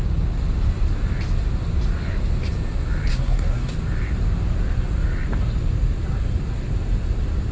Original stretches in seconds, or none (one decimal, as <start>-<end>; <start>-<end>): 0.0-3.1; 3.7-7.5